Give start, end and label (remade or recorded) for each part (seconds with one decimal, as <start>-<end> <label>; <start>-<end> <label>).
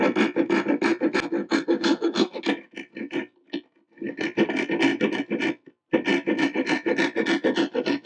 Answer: 0.0-1.4 recorded; 1.4-2.4 remade; 2.4-8.1 recorded